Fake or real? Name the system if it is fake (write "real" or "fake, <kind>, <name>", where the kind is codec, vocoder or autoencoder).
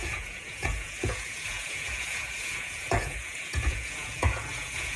fake, vocoder, Vocos